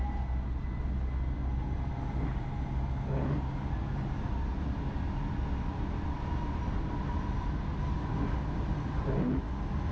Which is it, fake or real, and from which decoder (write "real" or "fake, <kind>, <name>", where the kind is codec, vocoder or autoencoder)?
real